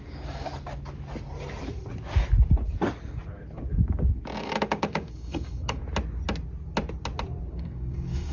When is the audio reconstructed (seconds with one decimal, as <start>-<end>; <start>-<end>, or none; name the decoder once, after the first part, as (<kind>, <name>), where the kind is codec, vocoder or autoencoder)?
0.0-0.5 (codec, DAC); 4.4-5.8; 7.5-8.3